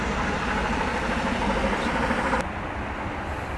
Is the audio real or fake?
real